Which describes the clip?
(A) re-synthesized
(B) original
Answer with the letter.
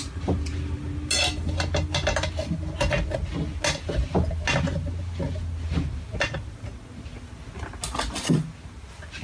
B